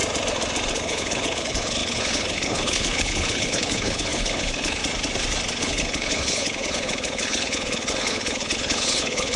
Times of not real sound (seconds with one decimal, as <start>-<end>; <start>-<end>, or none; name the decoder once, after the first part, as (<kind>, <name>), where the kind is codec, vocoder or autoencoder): 0.7-4.8 (codec, HILCodec); 5.6-9.4